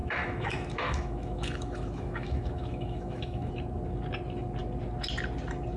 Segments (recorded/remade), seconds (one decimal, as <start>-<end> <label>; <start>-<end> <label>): 0.0-3.5 remade; 3.5-5.8 recorded